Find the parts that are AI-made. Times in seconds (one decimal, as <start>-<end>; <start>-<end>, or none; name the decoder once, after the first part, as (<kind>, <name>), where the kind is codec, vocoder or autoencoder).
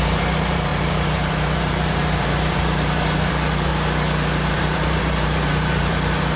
0.0-3.7 (vocoder, BigVGAN v2); 4.5-6.4